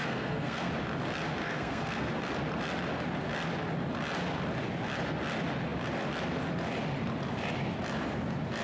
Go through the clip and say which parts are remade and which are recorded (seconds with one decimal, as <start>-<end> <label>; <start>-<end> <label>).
0.0-0.7 remade; 0.7-1.4 recorded; 1.4-2.1 remade; 2.1-8.6 recorded